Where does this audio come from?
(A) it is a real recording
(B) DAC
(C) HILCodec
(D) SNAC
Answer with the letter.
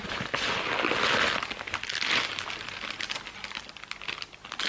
A